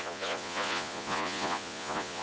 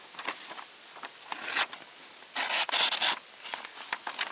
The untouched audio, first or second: second